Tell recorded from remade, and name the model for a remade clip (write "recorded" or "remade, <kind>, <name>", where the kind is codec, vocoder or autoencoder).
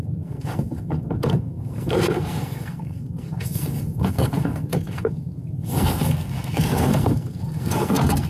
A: remade, codec, SNAC